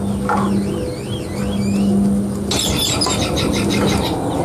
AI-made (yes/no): no